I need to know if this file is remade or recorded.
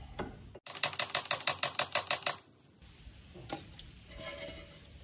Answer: recorded